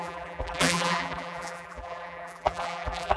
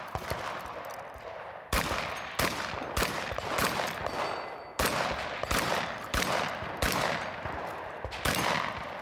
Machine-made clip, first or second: first